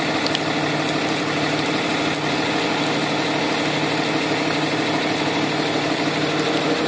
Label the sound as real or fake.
real